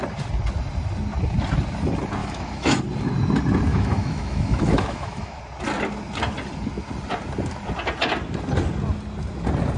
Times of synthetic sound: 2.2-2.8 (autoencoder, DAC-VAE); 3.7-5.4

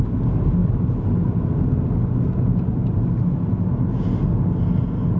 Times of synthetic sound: none

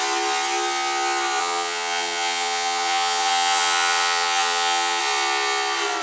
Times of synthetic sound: 1.4-5.0 (vocoder, HiFi-GAN)